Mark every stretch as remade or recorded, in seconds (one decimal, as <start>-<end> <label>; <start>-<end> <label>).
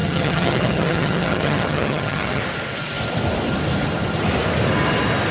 0.0-2.4 remade; 2.4-5.3 recorded